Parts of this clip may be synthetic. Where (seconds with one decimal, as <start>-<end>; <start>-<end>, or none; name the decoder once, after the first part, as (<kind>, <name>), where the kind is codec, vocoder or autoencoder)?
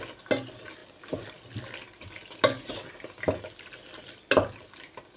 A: none